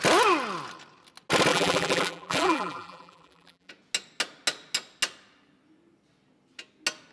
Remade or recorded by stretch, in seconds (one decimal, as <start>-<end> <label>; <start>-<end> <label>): 0.0-1.5 recorded; 1.5-3.7 remade; 3.7-7.1 recorded